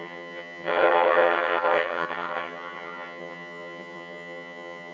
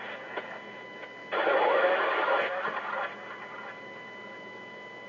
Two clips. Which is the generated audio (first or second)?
first